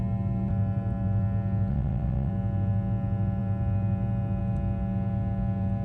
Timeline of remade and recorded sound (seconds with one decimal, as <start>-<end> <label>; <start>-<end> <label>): 0.0-1.7 recorded; 1.7-2.3 remade; 2.3-5.8 recorded